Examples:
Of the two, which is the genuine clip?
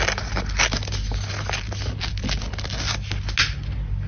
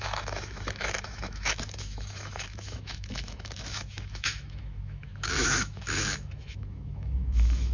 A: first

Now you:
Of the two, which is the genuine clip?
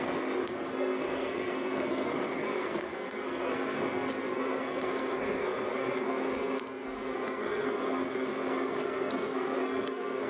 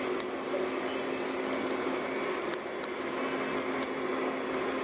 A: second